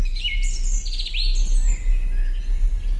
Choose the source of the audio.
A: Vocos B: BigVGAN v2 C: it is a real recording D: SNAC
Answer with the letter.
C